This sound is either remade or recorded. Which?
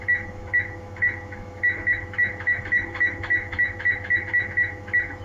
remade